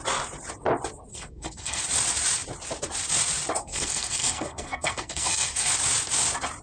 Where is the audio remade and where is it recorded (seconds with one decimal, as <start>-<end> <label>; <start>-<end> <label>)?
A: 0.0-1.1 recorded; 1.1-1.8 remade; 1.8-3.6 recorded; 3.6-5.7 remade; 5.7-6.6 recorded